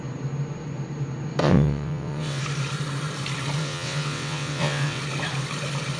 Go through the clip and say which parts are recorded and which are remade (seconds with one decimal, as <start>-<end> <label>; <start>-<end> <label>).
0.0-1.4 recorded; 1.4-2.4 remade; 2.4-3.6 recorded; 3.6-5.0 remade; 5.0-6.0 recorded